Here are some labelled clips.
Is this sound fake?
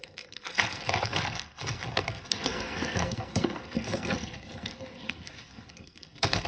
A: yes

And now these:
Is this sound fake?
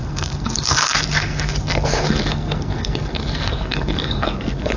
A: yes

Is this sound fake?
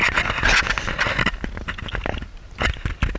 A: no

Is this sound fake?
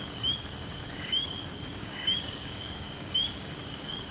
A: yes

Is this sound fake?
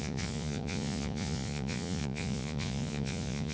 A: yes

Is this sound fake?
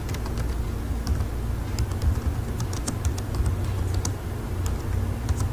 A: no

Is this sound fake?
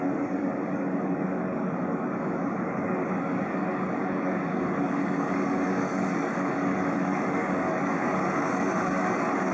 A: yes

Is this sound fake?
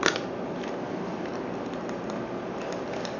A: no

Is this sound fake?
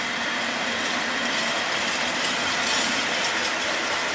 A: no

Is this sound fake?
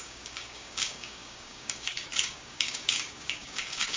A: yes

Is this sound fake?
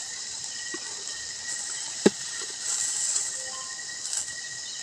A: yes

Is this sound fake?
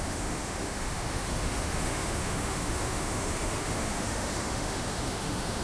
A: yes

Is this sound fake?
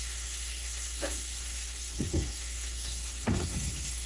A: yes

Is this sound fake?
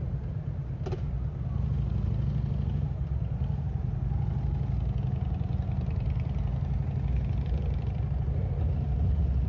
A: no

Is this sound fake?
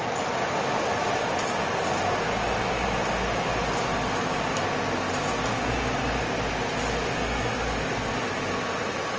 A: no